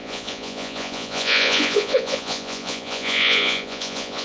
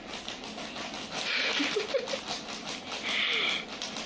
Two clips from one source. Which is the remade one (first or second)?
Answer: first